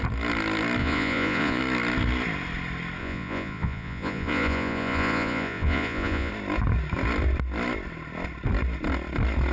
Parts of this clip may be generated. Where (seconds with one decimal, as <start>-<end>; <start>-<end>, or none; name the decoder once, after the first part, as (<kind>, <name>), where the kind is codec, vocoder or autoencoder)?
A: 0.8-1.6 (vocoder, Vocos); 3.0-6.3